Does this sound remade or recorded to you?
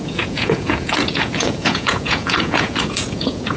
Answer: remade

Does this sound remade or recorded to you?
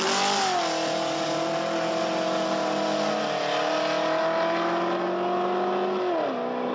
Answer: recorded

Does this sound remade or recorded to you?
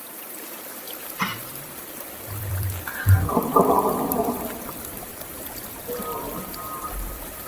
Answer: remade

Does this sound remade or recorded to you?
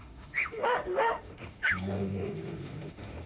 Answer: remade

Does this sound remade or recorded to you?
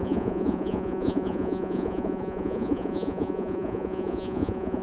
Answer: remade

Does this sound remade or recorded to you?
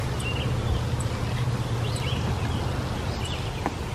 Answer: recorded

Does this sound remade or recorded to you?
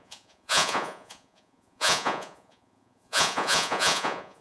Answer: remade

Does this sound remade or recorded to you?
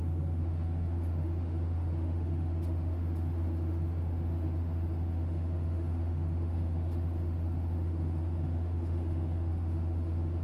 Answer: remade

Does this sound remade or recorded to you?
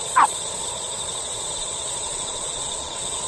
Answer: remade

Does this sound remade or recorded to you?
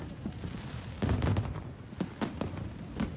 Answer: remade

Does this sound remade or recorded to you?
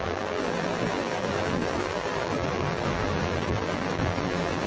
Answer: remade